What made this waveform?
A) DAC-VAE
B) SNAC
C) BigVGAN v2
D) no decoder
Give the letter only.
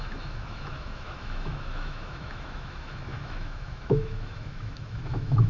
A